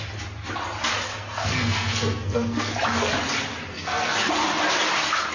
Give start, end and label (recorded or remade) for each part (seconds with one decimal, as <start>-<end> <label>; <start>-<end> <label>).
0.0-1.1 recorded; 1.1-2.7 remade; 2.7-3.7 recorded; 3.7-4.3 remade; 4.3-5.3 recorded